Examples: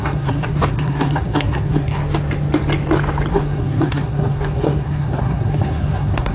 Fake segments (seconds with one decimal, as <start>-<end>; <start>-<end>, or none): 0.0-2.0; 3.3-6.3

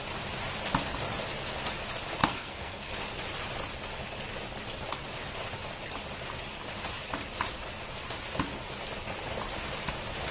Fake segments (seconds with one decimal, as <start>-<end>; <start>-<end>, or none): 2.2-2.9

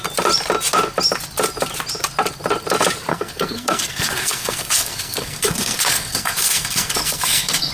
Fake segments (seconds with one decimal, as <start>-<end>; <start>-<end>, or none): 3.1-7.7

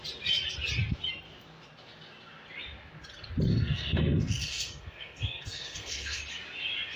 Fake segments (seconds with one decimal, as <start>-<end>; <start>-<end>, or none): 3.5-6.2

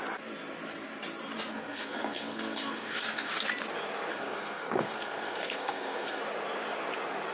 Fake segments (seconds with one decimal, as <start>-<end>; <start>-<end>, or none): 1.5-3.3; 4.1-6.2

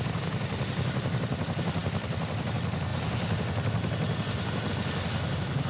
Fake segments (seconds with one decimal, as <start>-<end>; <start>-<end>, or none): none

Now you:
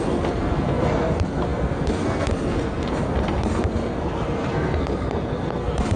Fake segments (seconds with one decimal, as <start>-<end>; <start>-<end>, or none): 0.0-6.0